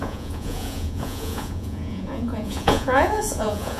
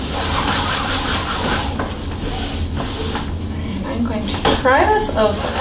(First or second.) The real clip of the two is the second